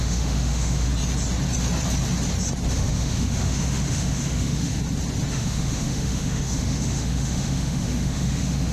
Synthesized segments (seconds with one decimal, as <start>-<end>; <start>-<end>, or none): 0.0-0.9; 2.7-4.8; 5.3-8.7